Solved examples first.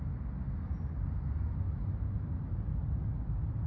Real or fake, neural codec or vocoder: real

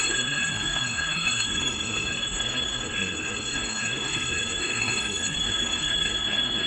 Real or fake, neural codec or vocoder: fake, codec, SNAC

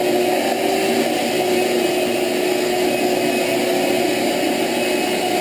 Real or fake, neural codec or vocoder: real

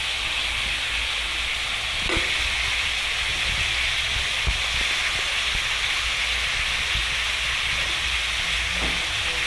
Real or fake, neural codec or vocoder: real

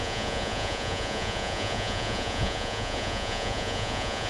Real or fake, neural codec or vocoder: fake, vocoder, Vocos